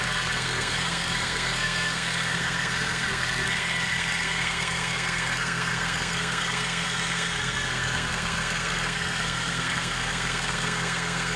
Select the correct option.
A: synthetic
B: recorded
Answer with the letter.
A